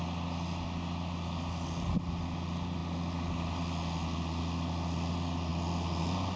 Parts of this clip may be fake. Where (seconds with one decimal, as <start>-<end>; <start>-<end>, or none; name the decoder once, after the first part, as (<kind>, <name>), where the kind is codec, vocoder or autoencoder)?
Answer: none